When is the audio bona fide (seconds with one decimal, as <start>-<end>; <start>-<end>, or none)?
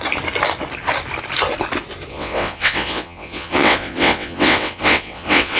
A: 0.0-2.1